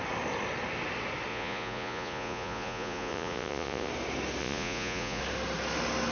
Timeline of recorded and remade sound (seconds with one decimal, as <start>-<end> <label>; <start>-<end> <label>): 0.0-1.3 recorded; 1.3-3.9 remade; 3.9-4.4 recorded; 4.4-5.2 remade; 5.2-6.1 recorded